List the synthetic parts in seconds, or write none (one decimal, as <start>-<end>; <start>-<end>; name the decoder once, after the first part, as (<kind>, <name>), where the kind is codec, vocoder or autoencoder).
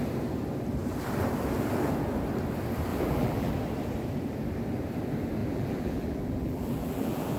2.9-3.5 (vocoder, BigVGAN v2); 5.4-7.4